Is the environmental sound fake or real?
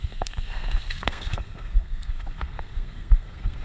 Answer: fake